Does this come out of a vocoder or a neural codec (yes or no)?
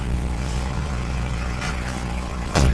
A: yes